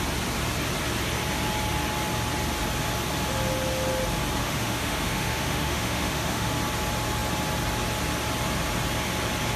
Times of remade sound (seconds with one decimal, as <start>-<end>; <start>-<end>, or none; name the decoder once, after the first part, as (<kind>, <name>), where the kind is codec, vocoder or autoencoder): 4.4-6.5 (autoencoder, DAC-VAE)